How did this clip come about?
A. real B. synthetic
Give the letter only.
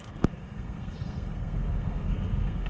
B